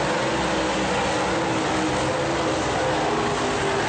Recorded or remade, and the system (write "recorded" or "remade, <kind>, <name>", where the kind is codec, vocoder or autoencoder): recorded